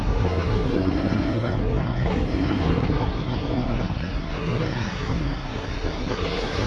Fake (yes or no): yes